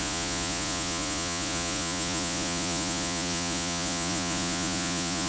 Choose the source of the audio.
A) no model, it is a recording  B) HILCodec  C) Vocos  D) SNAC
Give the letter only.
C